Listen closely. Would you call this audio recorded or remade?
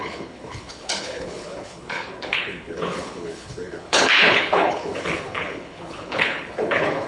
remade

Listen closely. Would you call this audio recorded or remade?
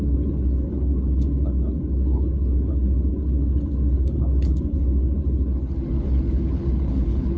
remade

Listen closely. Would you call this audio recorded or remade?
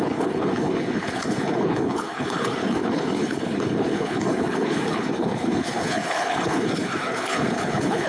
remade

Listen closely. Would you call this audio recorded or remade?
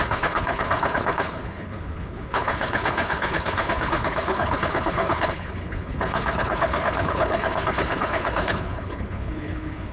remade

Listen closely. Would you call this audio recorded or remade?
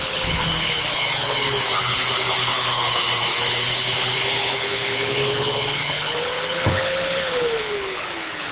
remade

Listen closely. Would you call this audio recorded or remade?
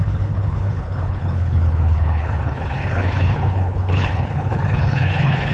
remade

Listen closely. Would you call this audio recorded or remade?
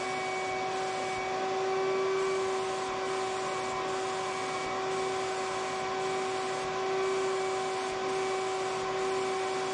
recorded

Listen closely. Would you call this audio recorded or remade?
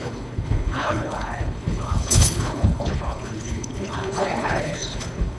remade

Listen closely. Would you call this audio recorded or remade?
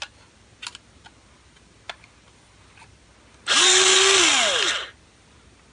recorded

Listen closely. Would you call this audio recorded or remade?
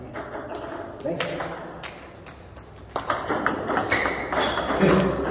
recorded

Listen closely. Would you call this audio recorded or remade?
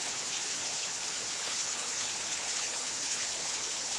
remade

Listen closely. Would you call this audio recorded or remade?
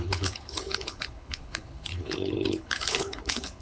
remade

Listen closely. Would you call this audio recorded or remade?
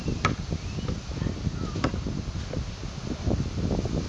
recorded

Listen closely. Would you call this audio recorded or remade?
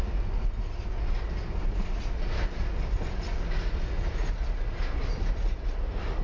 recorded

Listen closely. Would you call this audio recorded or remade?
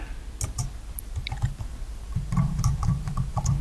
recorded